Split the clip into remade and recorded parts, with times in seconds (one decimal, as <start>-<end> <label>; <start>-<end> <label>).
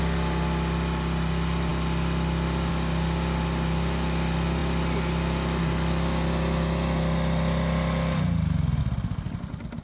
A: 0.0-9.8 recorded